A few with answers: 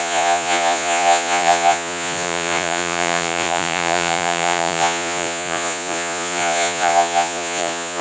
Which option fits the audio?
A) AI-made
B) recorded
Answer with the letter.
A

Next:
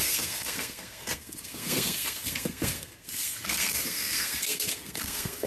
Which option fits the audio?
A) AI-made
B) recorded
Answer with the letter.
A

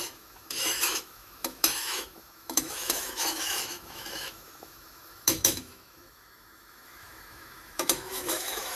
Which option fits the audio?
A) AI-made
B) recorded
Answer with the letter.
A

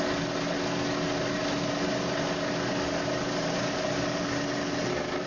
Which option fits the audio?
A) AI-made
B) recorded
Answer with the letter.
B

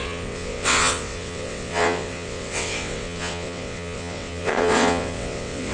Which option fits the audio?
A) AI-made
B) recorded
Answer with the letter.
A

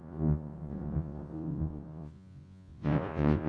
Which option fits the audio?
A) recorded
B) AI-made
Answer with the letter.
B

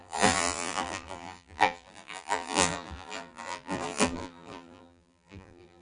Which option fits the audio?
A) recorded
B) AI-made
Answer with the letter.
B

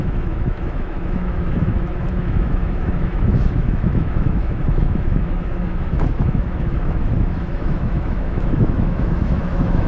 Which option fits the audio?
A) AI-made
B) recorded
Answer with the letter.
A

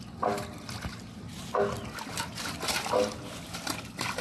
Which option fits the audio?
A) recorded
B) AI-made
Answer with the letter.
A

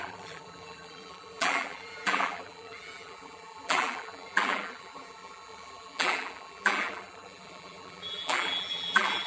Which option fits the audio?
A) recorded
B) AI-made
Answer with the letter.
B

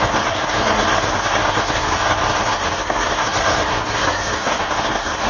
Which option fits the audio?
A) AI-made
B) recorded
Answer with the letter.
A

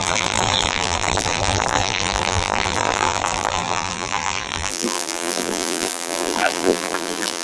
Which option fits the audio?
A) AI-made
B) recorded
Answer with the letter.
A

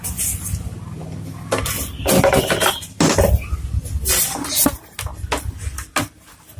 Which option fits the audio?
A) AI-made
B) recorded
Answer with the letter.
B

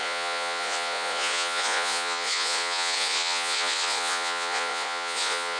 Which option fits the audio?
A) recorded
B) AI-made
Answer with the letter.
B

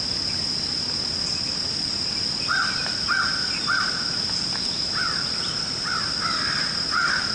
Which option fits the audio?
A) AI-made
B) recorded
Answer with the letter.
B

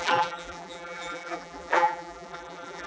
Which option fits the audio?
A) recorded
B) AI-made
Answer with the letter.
B